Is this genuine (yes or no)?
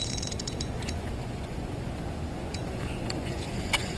no